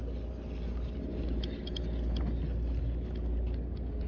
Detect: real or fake real